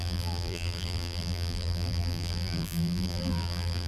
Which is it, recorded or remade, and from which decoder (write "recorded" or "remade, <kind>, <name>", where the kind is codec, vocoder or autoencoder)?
remade, vocoder, BigVGAN v2